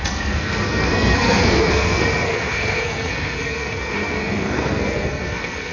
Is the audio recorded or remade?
remade